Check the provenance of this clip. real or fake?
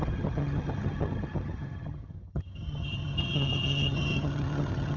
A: fake